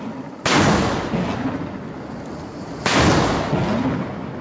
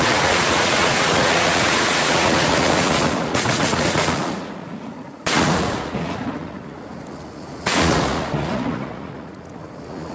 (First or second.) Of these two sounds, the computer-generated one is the second